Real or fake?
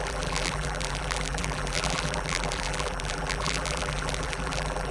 fake